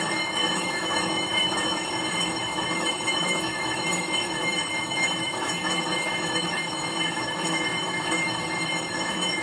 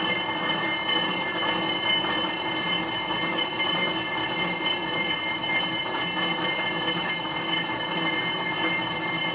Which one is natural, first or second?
second